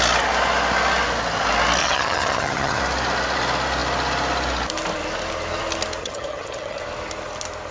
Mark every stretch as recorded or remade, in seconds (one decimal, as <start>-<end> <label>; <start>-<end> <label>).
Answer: 0.0-1.8 recorded; 1.8-2.8 remade; 2.8-6.0 recorded; 6.0-6.8 remade; 6.8-7.7 recorded